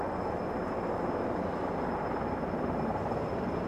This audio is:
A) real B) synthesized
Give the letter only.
A